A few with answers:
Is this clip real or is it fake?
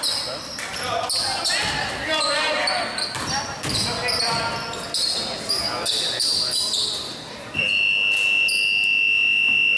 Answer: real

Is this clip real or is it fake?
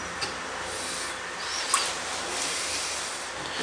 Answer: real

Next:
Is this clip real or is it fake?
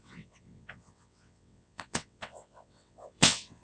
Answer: fake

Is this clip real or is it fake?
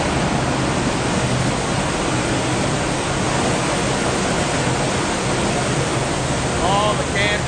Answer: real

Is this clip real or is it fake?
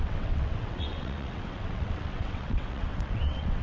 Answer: fake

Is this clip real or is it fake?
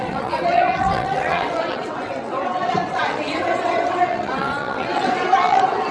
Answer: fake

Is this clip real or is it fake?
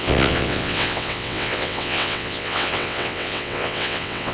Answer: fake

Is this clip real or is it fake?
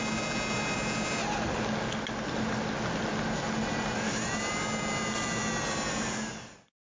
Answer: real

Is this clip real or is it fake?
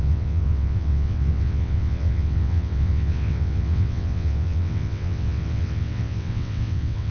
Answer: fake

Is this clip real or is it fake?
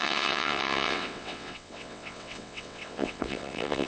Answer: fake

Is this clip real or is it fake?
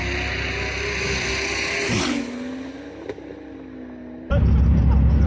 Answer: real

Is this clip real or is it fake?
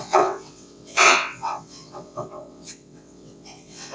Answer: fake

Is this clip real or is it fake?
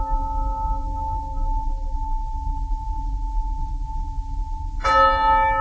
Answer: real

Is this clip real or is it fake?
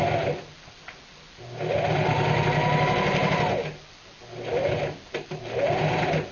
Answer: real